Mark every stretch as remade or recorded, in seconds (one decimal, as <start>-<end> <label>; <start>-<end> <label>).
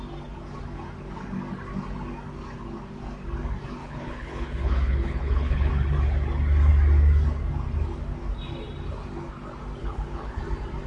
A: 0.0-3.8 recorded; 3.8-5.7 remade; 5.7-9.8 recorded; 9.8-10.4 remade; 10.4-10.9 recorded